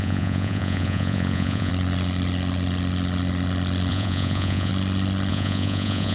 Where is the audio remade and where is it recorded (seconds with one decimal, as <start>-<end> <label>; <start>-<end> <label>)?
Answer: 0.0-1.7 remade; 1.7-3.9 recorded; 3.9-4.7 remade; 4.7-5.3 recorded; 5.3-6.1 remade

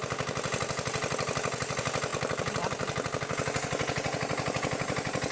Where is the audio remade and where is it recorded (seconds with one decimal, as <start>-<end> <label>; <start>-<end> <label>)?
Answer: 0.0-5.3 recorded

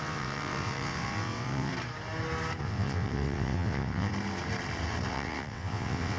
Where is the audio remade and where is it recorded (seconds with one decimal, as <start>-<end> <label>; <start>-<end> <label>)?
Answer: 0.0-1.7 remade; 1.7-2.6 recorded; 2.6-4.1 remade; 4.1-5.1 recorded; 5.1-6.2 remade

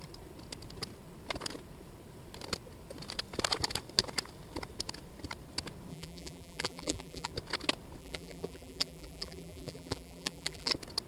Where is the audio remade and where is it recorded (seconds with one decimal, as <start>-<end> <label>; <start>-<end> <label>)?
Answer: 0.0-5.9 recorded; 5.9-7.3 remade; 7.3-8.0 recorded; 8.0-10.7 remade; 10.7-11.1 recorded